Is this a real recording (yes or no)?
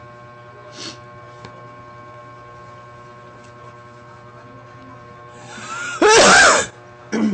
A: yes